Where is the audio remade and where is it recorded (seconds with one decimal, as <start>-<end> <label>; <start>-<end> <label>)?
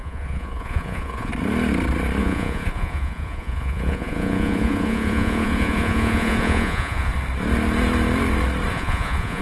0.0-1.3 remade; 1.3-2.2 recorded; 2.2-7.1 remade; 7.1-8.7 recorded; 8.7-9.4 remade